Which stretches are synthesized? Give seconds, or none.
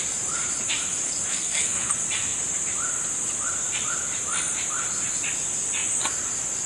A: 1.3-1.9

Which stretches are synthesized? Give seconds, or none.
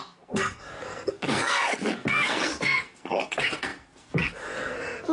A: 0.0-5.1